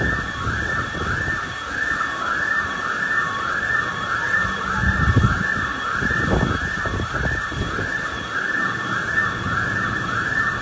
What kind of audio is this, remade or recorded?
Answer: recorded